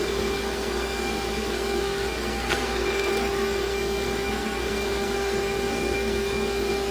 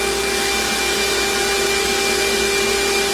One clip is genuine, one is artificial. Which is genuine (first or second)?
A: second